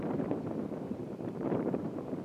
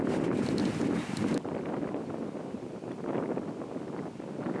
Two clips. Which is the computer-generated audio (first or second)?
first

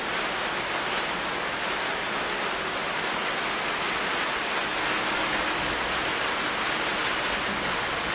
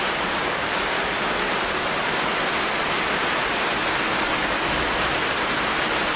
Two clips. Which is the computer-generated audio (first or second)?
second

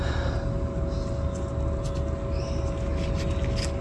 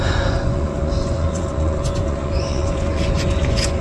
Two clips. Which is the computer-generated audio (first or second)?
second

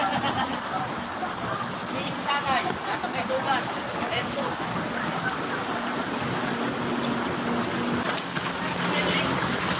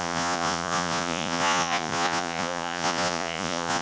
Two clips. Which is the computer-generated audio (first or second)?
second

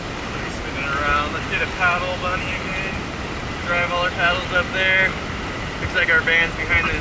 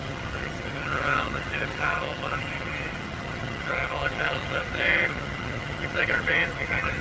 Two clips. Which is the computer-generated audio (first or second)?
second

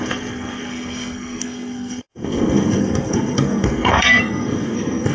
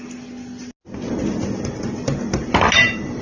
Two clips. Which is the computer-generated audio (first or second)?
first